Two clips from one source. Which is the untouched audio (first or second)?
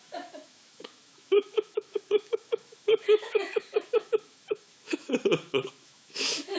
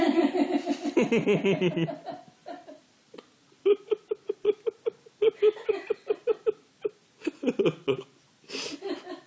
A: second